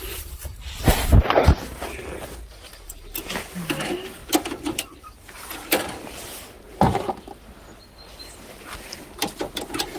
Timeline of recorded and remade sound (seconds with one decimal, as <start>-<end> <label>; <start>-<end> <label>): 0.0-10.0 recorded